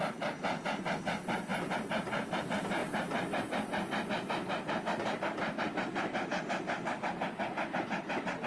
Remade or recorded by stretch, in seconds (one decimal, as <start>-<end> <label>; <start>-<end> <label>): 0.0-8.5 recorded